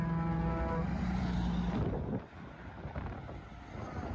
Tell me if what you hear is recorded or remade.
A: recorded